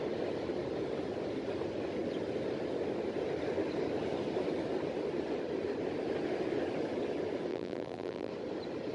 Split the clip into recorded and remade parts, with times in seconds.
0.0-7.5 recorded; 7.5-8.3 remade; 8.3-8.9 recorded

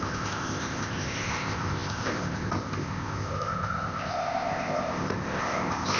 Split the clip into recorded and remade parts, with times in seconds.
0.0-6.0 remade

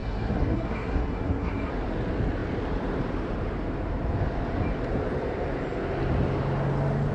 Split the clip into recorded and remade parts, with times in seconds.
0.0-1.7 remade; 1.7-7.1 recorded

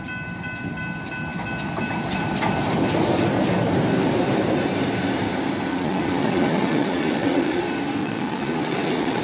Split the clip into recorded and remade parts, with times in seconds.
0.0-5.7 recorded; 5.7-7.6 remade; 7.6-8.0 recorded; 8.0-9.2 remade

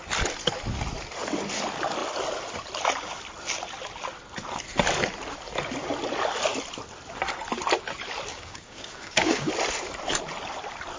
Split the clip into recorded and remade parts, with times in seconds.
0.0-8.3 recorded; 8.3-9.5 remade; 9.5-11.0 recorded